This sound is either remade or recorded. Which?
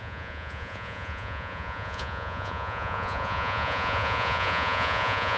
remade